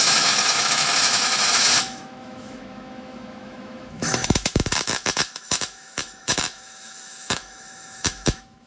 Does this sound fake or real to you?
fake